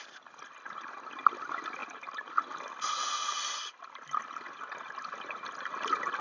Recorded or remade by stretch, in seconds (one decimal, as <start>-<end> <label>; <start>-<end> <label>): 0.0-6.2 recorded